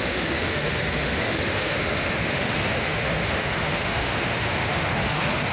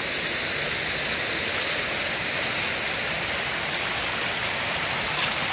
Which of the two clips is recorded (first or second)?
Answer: second